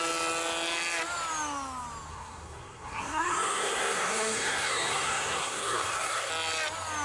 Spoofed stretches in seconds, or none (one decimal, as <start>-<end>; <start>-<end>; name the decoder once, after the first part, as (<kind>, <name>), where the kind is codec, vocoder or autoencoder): 2.1-6.3 (codec, SNAC)